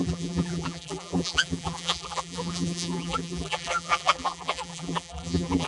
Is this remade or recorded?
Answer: remade